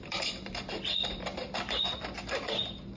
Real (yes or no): yes